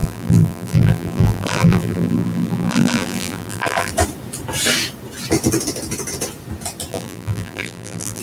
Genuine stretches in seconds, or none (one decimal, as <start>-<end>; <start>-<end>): 3.9-6.9